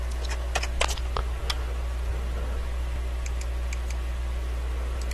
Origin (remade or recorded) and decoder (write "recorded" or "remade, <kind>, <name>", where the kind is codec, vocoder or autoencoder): recorded